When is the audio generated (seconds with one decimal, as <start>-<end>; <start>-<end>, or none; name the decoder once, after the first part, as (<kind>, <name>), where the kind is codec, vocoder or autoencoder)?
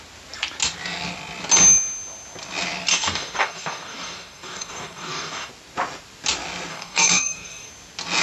2.9-5.5 (codec, DAC); 6.7-7.7